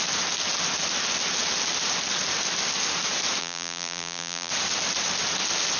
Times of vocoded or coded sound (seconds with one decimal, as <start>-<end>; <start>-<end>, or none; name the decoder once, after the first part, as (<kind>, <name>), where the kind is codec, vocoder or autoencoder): 3.4-4.5 (vocoder, BigVGAN v2)